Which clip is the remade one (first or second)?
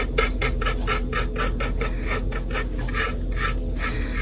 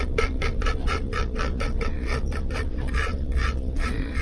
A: second